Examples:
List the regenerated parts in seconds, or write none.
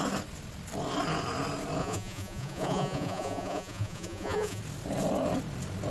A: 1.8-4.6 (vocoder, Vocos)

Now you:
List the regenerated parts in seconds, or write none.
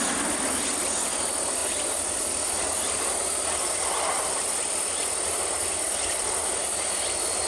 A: none